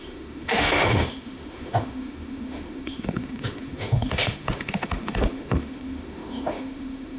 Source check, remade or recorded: remade